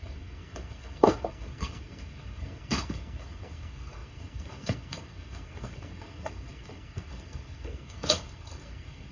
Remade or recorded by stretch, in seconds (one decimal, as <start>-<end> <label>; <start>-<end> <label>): 0.0-9.1 remade